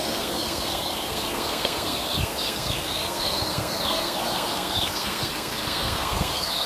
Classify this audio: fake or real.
fake